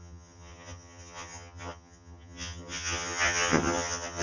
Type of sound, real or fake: fake